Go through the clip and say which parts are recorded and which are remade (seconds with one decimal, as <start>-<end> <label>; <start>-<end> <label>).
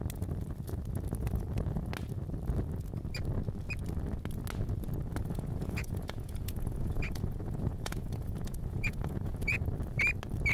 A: 0.0-5.2 recorded; 5.2-9.6 remade; 9.6-10.5 recorded